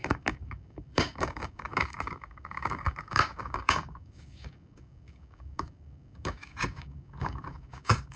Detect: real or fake fake